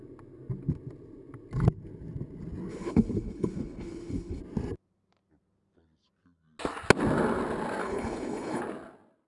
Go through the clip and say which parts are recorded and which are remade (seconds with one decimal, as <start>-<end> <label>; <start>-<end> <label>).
0.0-2.7 recorded; 2.7-4.4 remade; 4.4-7.8 recorded; 7.8-8.6 remade; 8.6-9.3 recorded

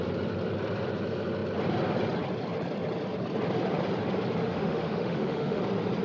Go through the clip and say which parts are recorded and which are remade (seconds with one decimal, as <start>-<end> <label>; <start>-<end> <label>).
0.0-4.4 recorded; 4.4-5.6 remade; 5.6-6.0 recorded

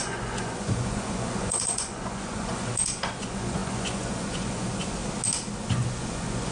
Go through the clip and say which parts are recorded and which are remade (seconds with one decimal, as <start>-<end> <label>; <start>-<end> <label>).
0.0-5.0 remade; 5.0-5.7 recorded; 5.7-6.5 remade

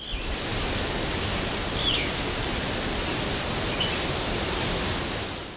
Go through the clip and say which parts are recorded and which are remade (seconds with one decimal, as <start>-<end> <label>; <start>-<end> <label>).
0.0-0.5 recorded; 0.5-1.4 remade; 1.4-5.6 recorded

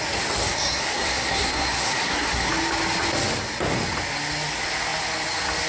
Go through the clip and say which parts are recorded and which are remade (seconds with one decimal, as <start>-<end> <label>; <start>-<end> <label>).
0.0-0.4 recorded; 0.4-2.5 remade; 2.5-5.7 recorded

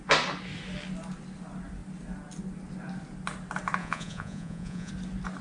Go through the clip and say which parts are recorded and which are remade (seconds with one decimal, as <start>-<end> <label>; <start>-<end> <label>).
0.0-3.8 recorded; 3.8-4.9 remade; 4.9-5.4 recorded